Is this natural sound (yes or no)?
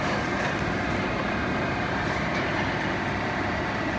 no